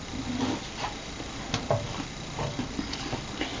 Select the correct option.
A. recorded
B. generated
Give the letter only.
A